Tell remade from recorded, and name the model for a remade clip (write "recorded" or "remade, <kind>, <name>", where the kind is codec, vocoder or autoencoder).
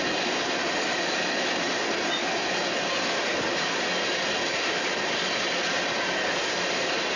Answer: recorded